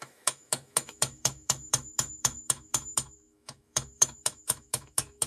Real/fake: fake